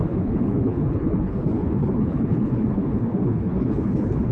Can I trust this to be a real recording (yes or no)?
no